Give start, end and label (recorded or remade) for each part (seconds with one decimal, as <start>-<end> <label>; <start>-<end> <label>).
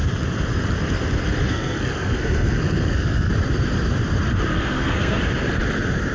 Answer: 0.0-1.5 recorded; 1.5-3.3 remade; 3.3-4.5 recorded; 4.5-5.2 remade; 5.2-6.1 recorded